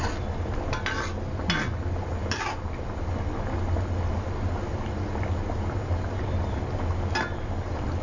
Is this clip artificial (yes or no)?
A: no